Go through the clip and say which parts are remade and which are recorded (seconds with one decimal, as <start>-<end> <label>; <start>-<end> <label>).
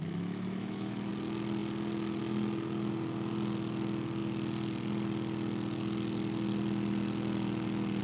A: 0.0-1.1 remade; 1.1-8.0 recorded